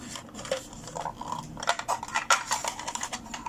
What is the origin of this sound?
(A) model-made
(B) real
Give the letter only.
B